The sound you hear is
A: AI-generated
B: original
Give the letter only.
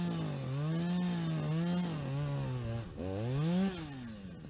B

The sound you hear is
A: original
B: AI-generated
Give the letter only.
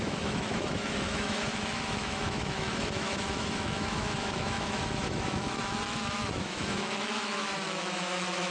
B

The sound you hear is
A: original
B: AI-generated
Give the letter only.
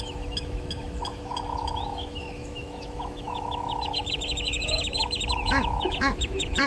B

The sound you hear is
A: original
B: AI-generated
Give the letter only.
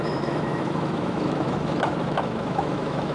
B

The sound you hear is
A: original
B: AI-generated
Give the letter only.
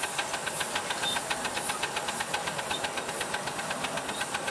A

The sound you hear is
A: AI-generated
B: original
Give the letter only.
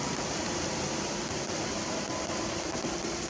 B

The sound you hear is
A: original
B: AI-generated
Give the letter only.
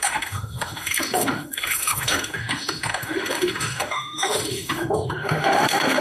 B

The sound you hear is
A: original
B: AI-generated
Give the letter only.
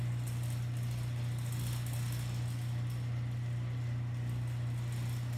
A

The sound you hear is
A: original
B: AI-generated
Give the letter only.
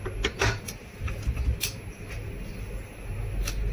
A